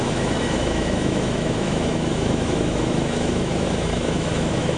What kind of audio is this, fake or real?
fake